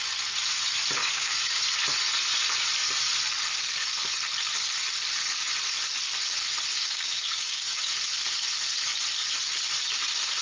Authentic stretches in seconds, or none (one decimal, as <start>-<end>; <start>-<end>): 0.0-1.0; 1.6-6.8; 7.9-10.4